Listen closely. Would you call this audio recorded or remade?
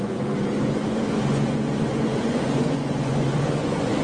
remade